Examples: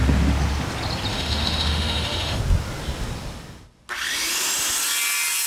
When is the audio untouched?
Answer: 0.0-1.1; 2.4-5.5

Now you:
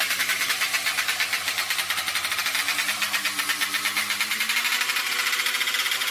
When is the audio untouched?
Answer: 0.0-6.1

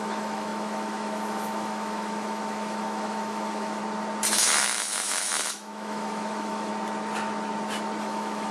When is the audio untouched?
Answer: 3.8-4.3; 6.7-8.0

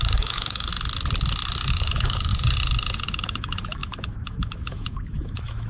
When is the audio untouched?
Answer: 0.7-1.7; 2.3-3.0

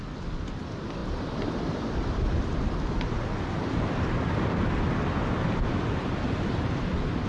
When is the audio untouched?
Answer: 0.0-7.3